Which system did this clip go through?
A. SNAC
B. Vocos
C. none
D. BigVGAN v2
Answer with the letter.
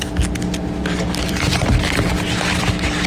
C